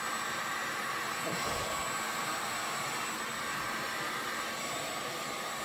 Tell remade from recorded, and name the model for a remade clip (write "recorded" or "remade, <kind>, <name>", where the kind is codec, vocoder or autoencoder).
remade, vocoder, BigVGAN v2